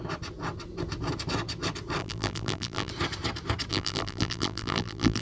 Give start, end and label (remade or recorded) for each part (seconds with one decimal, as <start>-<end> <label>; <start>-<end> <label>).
0.0-2.0 recorded; 2.0-2.9 remade; 2.9-3.7 recorded; 3.7-5.2 remade